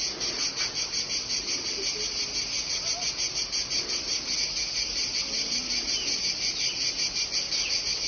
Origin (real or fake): real